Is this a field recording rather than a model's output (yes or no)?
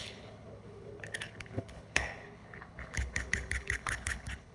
no